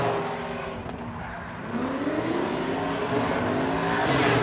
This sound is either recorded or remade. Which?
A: recorded